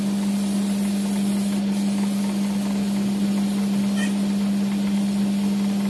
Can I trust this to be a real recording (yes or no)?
yes